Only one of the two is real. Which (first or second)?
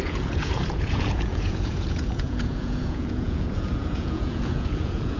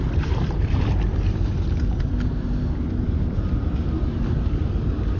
second